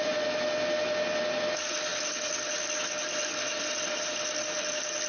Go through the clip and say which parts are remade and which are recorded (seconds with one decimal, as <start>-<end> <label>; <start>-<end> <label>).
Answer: 0.0-5.1 recorded